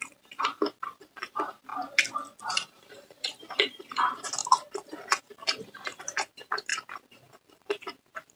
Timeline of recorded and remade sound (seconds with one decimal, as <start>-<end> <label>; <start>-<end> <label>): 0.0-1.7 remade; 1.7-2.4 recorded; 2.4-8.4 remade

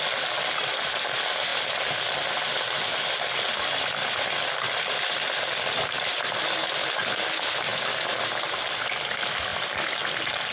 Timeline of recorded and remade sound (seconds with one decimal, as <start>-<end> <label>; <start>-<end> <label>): 0.0-10.5 recorded

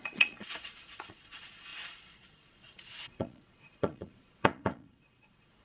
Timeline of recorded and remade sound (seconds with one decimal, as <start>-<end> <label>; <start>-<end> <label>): 0.0-5.6 remade

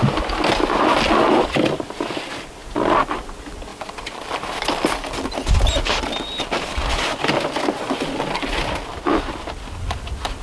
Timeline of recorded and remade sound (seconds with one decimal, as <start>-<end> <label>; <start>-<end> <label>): 0.0-10.4 recorded

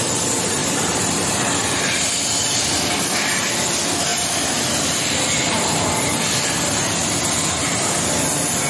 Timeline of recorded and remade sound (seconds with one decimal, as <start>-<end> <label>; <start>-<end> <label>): 0.0-0.6 recorded; 0.6-3.5 remade; 3.5-4.1 recorded; 4.1-5.8 remade; 5.8-8.7 recorded

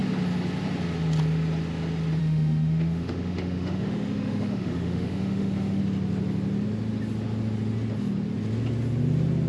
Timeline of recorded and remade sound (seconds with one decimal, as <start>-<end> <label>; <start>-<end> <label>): 0.0-2.2 recorded; 2.2-5.8 remade; 5.8-9.5 recorded

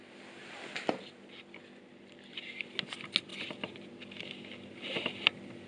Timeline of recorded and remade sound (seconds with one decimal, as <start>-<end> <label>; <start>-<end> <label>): 0.0-5.7 recorded

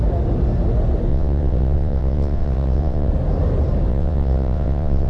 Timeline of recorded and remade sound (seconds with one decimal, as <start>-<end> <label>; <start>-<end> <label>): 0.0-1.1 recorded; 1.1-3.1 remade; 3.1-3.9 recorded; 3.9-5.1 remade